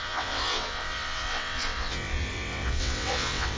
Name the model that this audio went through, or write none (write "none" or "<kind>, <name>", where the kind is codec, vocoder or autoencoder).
vocoder, WaveNeXt